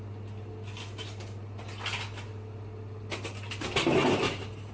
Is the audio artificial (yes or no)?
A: no